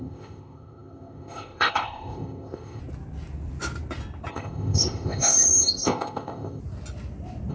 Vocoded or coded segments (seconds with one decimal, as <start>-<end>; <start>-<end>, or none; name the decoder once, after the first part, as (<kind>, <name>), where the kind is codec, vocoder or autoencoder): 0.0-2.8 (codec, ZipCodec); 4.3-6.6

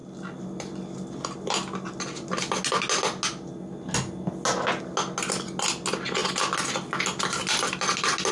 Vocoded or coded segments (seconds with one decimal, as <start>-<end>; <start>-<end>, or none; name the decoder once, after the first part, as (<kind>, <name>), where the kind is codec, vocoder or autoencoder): none

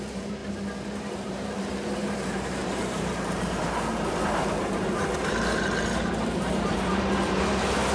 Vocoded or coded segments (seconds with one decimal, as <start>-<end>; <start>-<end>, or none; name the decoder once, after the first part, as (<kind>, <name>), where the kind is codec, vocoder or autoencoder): 0.0-0.4 (vocoder, BigVGAN v2); 1.1-7.9

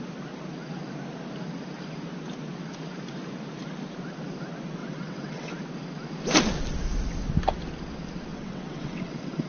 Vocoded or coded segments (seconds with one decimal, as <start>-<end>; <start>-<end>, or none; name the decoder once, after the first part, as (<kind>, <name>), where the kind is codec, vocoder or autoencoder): 4.8-5.5 (vocoder, WaveNeXt); 8.3-9.5